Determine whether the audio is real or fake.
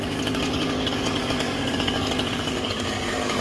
fake